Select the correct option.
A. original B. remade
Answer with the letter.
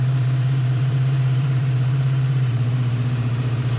B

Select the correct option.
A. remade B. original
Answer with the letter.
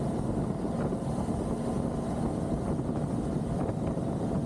B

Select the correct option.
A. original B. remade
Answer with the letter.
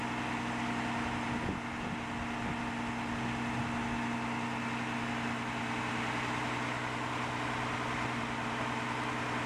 A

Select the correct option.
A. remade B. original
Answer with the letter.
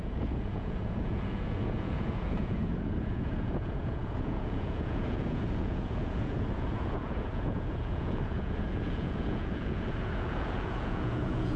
A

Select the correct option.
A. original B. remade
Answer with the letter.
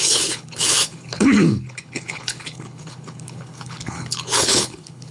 B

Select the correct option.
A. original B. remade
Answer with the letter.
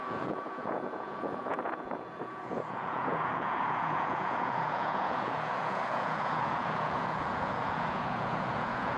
B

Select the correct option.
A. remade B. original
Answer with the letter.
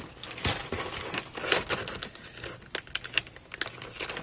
B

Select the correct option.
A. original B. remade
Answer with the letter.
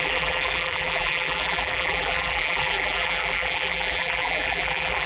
B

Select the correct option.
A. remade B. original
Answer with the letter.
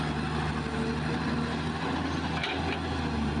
B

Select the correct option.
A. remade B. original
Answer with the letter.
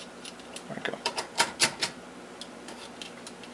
B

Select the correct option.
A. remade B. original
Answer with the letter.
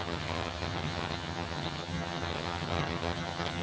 A